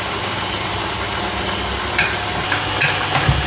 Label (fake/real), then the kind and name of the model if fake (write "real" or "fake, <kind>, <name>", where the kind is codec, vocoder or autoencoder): real